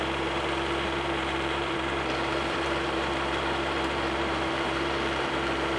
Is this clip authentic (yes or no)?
no